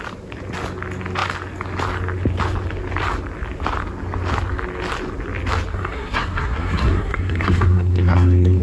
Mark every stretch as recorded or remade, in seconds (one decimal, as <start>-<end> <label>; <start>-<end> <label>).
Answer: 0.0-5.7 recorded; 5.7-8.6 remade